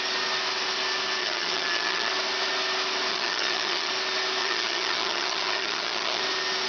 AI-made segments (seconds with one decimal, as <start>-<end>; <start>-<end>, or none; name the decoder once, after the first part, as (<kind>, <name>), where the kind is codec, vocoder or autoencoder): 1.2-2.1 (vocoder, HiFi-GAN); 3.1-3.9; 4.4-6.2